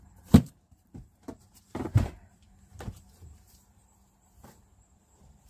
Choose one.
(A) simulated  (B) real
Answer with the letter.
A